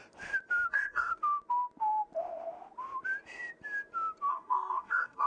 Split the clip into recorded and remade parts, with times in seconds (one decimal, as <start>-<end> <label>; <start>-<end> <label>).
0.0-0.7 recorded; 0.7-1.1 remade; 1.1-4.3 recorded; 4.3-5.3 remade